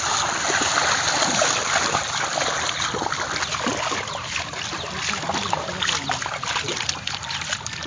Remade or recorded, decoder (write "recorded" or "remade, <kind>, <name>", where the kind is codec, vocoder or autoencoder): recorded